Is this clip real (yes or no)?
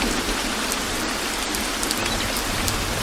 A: yes